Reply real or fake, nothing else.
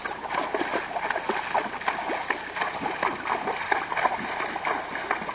real